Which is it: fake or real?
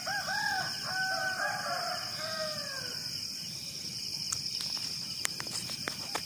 real